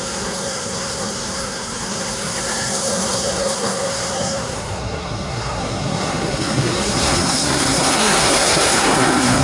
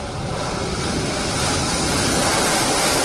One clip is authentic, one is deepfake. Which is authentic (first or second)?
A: second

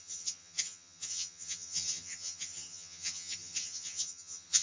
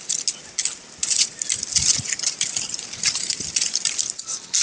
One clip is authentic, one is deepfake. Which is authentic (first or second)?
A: second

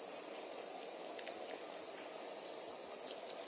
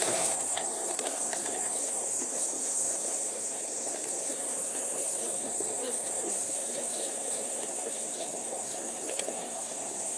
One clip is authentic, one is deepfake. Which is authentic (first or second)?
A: first